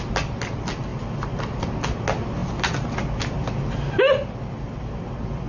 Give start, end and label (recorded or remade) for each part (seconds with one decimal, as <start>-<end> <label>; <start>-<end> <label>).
0.0-0.9 recorded; 0.9-1.6 remade; 1.6-5.5 recorded